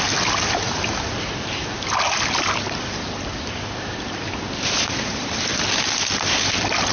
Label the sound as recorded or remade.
recorded